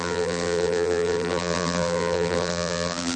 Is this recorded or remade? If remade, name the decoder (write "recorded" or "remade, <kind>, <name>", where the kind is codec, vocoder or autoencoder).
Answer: remade, vocoder, BigVGAN v2